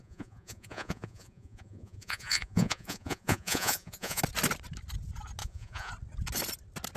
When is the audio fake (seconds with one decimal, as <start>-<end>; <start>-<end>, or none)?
0.0-4.2; 5.4-5.9